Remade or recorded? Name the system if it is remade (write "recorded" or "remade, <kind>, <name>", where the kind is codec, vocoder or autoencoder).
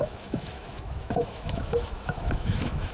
remade, autoencoder, DAC-VAE